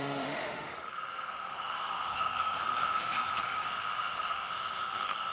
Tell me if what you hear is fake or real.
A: fake